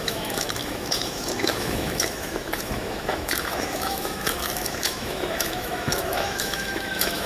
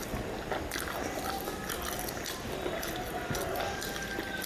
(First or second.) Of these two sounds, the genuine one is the second